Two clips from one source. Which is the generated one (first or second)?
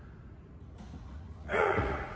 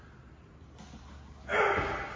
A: first